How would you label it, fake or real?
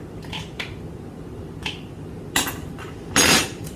real